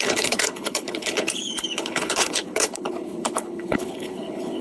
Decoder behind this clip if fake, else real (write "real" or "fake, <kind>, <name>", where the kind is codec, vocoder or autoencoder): fake, codec, HILCodec